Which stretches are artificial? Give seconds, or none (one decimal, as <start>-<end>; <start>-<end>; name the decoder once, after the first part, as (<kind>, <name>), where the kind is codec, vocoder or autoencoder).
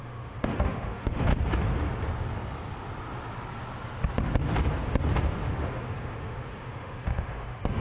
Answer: 0.0-1.3 (autoencoder, DAC-VAE); 5.5-7.8